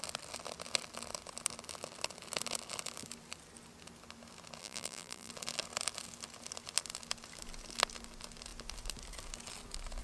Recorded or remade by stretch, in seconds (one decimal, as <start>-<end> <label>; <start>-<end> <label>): 0.0-4.6 recorded; 4.6-5.3 remade; 5.3-10.0 recorded